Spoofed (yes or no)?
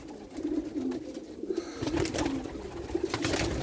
no